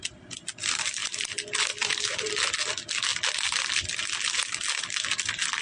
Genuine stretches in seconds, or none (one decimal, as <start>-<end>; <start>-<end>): 0.0-5.6